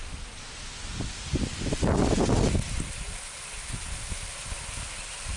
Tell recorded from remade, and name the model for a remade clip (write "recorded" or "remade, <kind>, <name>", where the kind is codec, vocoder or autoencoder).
recorded